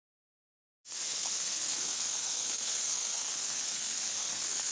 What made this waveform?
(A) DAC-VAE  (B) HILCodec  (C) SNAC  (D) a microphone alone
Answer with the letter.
C